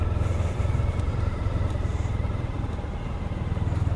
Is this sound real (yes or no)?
yes